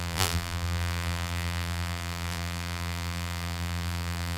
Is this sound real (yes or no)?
no